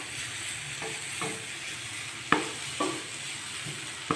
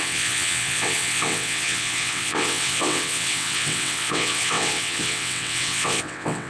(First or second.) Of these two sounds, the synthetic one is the second